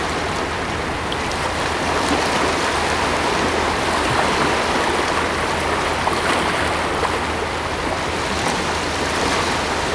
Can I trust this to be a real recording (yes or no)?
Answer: yes